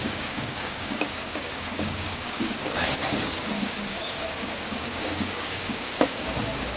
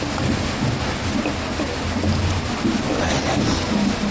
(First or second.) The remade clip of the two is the first